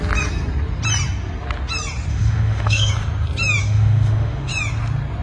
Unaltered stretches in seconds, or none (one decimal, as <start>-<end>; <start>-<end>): 0.0-2.1; 2.9-3.6; 4.5-5.2